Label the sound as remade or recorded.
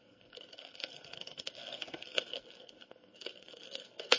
remade